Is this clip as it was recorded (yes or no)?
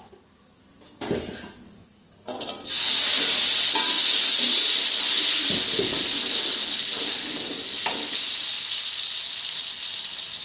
yes